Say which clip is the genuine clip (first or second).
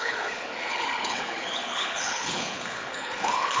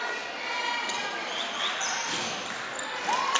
second